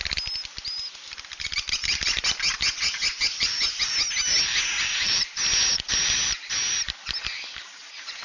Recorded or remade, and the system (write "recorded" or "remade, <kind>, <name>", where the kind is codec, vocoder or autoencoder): recorded